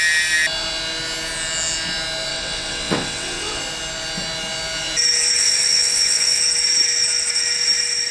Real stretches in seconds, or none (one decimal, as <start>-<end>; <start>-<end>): 0.0-2.3; 3.6-5.4; 6.4-8.1